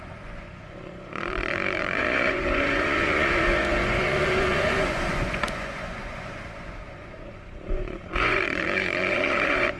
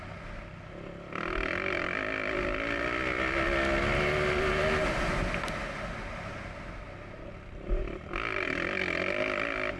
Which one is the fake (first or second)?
first